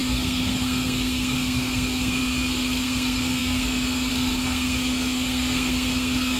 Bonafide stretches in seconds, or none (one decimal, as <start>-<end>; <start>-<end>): none